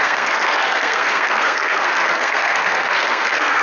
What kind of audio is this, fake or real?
fake